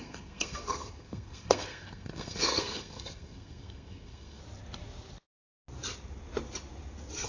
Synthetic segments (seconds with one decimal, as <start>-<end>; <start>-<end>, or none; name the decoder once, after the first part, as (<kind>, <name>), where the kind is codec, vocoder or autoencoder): 0.0-4.4 (codec, SNAC)